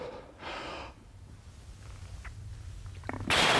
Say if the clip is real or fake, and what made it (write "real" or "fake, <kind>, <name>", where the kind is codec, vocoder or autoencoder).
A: real